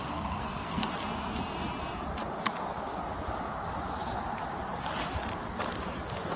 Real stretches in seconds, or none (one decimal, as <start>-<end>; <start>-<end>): 0.9-6.4